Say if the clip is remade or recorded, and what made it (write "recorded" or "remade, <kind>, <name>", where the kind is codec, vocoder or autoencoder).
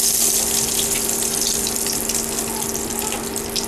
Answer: recorded